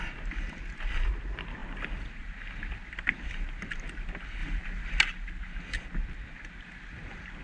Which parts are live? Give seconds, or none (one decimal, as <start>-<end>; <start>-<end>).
0.0-7.4